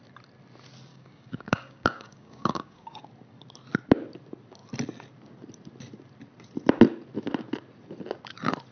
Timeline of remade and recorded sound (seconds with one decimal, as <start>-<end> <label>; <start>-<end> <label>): 0.0-0.9 recorded; 0.9-3.0 remade; 3.0-8.7 recorded